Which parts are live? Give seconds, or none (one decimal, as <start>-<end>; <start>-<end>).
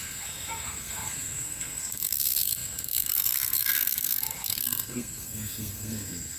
none